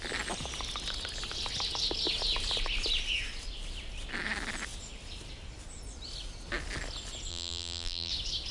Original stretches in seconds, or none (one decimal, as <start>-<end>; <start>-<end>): 0.0-7.3; 8.1-8.5

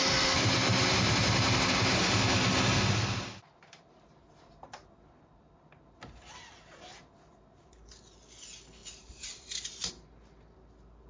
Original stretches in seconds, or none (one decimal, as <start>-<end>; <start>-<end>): 0.0-8.8; 9.9-11.1

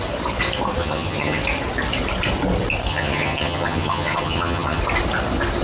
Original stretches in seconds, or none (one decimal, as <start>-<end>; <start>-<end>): 0.0-0.8; 1.4-2.9; 4.8-5.6

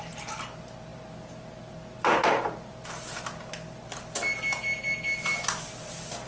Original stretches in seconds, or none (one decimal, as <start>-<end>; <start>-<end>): 0.0-6.3